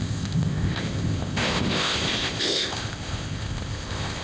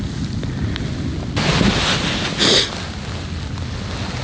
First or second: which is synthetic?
first